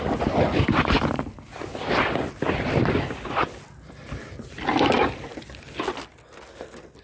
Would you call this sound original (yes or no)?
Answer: yes